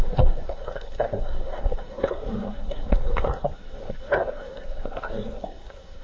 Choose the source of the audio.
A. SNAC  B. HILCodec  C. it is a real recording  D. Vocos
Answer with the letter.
A